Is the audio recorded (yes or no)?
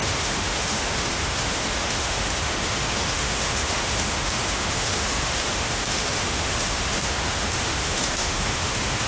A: no